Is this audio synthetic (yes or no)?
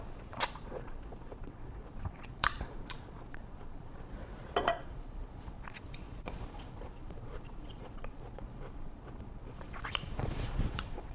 yes